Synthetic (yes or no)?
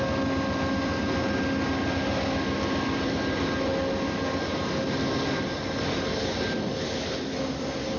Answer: no